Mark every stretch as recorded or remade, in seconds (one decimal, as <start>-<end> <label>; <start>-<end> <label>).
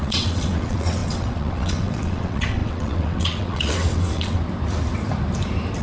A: 0.0-4.4 remade; 4.4-5.8 recorded